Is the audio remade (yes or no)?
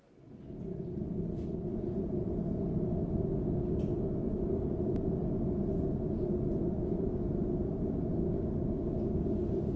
no